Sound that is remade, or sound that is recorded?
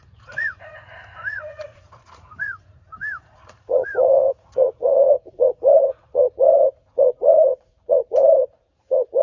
remade